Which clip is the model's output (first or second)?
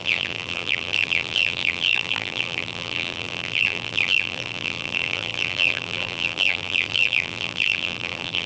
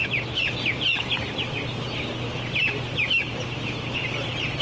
first